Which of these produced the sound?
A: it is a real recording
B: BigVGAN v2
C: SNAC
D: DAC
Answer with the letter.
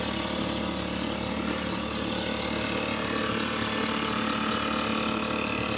A